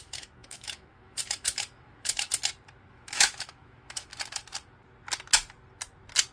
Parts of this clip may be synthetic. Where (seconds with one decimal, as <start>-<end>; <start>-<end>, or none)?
0.0-2.3; 2.9-4.1